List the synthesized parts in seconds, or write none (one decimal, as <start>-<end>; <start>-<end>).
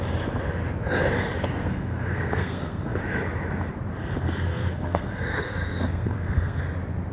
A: 1.6-3.0; 4.0-6.6